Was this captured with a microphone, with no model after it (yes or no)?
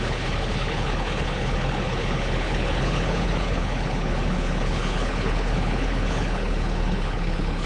no